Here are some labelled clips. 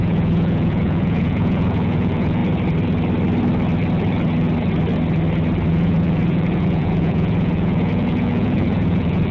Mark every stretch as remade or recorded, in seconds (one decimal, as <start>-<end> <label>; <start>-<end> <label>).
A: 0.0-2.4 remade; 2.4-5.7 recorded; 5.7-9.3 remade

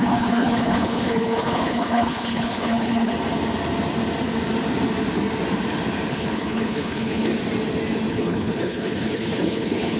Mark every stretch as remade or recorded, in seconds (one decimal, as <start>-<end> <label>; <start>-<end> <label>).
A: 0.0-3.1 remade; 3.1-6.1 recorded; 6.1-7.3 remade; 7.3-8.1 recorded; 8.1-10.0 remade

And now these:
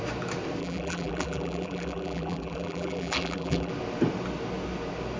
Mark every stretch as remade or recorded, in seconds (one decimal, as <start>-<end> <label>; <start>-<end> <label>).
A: 0.0-0.6 recorded; 0.6-3.7 remade; 3.7-5.2 recorded

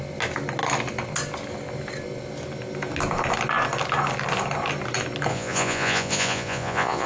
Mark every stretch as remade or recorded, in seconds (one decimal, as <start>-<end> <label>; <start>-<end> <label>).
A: 0.0-5.3 recorded; 5.3-7.1 remade

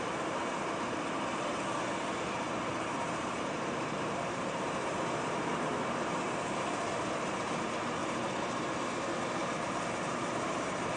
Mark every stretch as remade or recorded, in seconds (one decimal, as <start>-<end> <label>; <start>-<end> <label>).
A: 0.0-2.7 recorded; 2.7-7.0 remade; 7.0-8.0 recorded; 8.0-11.0 remade

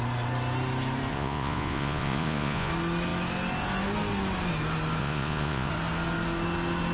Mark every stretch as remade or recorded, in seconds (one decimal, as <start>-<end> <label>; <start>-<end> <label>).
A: 0.0-1.1 recorded; 1.1-2.7 remade; 2.7-5.0 recorded; 5.0-5.7 remade; 5.7-6.9 recorded

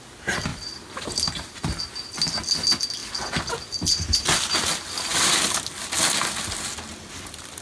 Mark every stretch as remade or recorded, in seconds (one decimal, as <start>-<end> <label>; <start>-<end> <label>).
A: 0.0-7.6 recorded

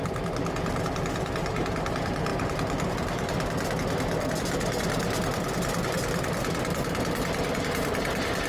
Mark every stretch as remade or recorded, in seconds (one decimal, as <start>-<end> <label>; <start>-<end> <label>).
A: 0.0-8.5 recorded